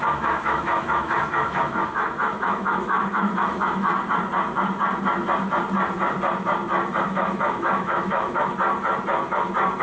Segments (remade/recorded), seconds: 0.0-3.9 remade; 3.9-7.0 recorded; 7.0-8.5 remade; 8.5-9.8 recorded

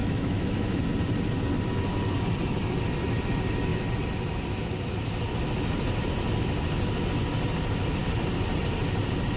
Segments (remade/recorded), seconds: 0.0-0.8 remade; 0.8-9.4 recorded

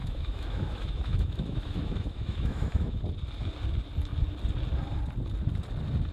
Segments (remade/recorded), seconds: 0.0-3.0 remade; 3.0-6.1 recorded

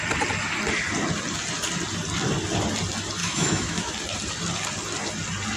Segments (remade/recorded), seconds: 0.0-3.2 recorded; 3.2-3.9 remade; 3.9-5.6 recorded

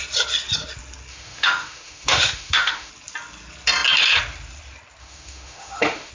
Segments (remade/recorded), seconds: 0.0-1.1 recorded; 1.1-2.9 remade; 2.9-5.0 recorded; 5.0-6.1 remade

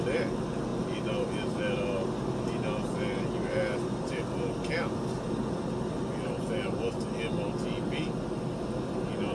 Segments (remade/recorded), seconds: 0.0-9.3 recorded

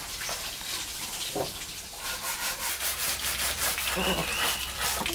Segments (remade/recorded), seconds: 0.0-5.1 recorded